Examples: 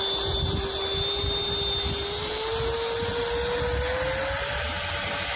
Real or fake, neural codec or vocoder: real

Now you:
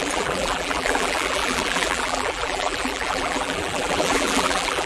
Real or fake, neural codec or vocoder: fake, vocoder, BigVGAN v2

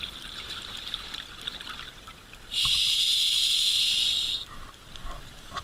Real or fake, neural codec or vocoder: real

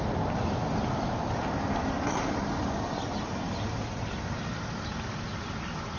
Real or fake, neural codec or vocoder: real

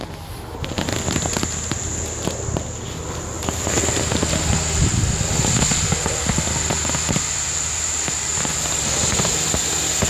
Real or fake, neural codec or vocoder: real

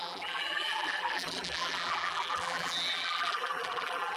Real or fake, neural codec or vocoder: fake, vocoder, BigVGAN v2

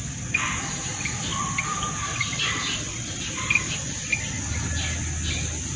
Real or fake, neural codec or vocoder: real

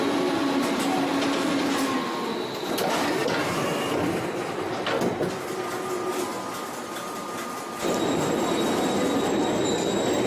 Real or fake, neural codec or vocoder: real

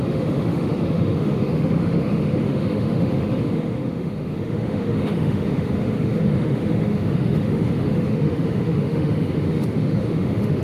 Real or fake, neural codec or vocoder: fake, autoencoder, DAC-VAE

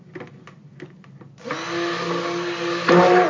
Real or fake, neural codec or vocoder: real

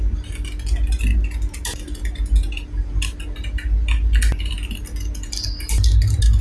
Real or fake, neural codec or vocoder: real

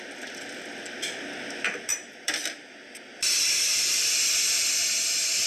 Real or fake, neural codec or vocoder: fake, vocoder, BigVGAN v2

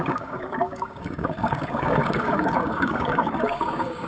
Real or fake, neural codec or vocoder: fake, codec, DAC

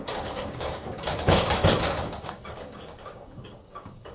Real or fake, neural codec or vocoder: fake, codec, DAC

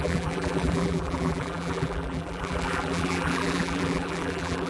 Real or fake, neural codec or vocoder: fake, vocoder, BigVGAN v2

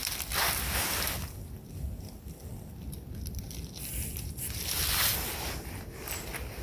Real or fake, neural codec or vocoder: real